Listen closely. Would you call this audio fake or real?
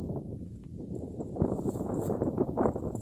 fake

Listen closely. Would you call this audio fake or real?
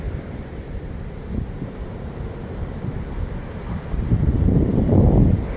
real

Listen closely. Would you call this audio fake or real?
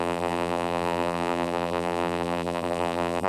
fake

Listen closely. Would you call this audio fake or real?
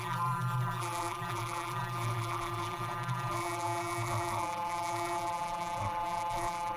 fake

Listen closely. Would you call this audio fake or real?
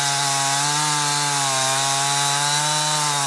real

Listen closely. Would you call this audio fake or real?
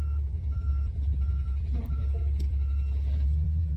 fake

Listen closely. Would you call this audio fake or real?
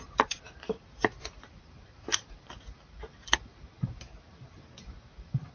fake